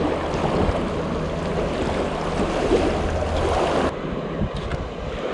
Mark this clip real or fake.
real